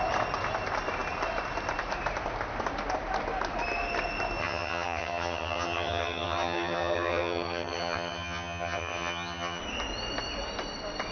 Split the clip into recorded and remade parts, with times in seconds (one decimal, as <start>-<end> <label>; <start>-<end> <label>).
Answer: 0.0-4.4 recorded; 4.4-9.6 remade; 9.6-11.1 recorded